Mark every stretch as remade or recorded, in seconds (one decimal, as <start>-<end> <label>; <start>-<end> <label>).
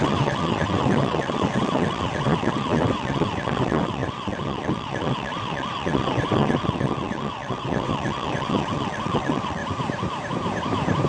0.0-9.6 remade; 9.6-11.1 recorded